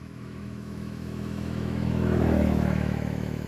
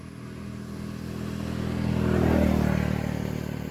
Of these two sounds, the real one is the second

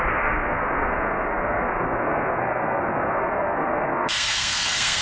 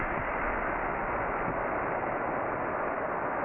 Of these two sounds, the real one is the second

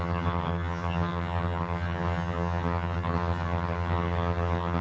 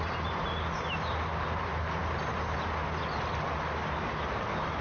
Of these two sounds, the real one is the second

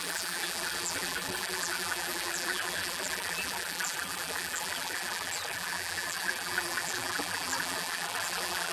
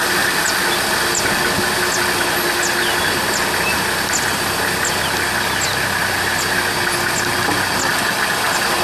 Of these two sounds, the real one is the second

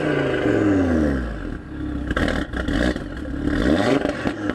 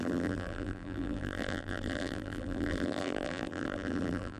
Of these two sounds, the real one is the first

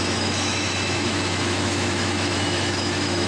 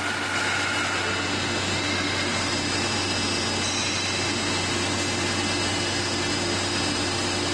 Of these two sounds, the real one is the second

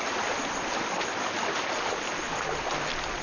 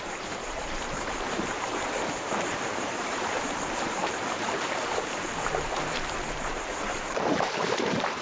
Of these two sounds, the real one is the first